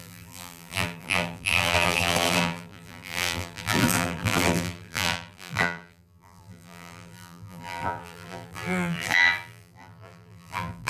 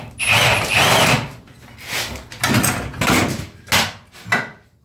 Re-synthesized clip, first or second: first